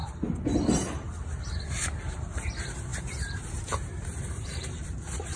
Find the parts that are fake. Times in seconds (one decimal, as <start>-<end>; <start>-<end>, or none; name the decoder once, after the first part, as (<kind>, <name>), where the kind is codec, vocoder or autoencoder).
1.4-5.4 (vocoder, BigVGAN v2)